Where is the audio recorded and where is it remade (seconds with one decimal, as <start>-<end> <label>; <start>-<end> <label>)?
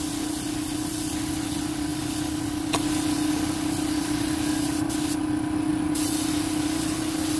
0.0-7.4 recorded